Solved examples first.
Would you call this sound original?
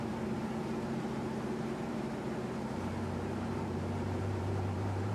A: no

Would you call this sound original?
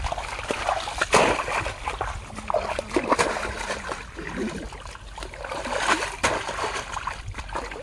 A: no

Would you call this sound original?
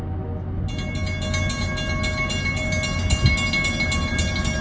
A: yes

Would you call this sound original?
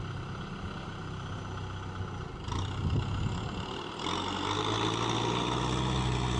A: yes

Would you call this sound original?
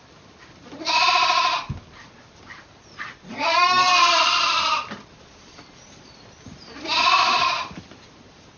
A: no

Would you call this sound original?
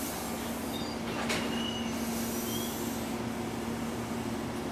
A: yes